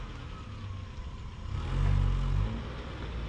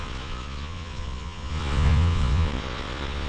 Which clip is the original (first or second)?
first